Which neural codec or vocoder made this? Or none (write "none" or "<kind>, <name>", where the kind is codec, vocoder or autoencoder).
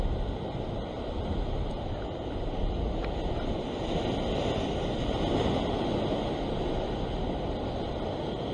none